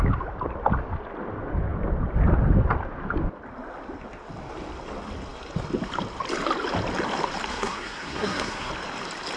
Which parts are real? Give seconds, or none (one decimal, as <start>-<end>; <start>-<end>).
0.0-7.5; 8.7-9.4